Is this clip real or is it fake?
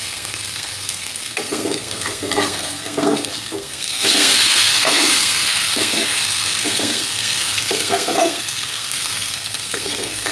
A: fake